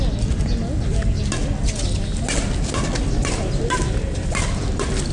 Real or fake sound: real